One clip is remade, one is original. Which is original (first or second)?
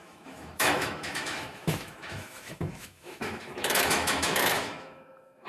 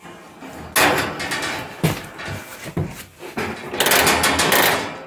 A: second